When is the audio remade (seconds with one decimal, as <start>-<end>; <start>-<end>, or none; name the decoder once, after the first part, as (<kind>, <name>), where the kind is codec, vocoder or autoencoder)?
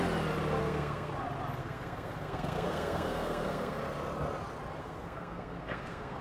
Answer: 0.6-1.1 (codec, SNAC); 1.6-3.8; 4.8-6.2